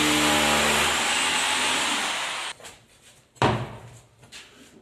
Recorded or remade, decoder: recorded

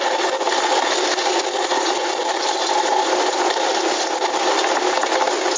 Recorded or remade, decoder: recorded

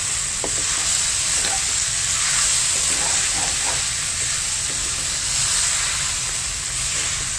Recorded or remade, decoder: recorded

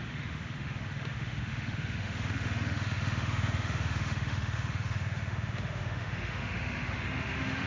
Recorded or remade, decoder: remade, autoencoder, DAC-VAE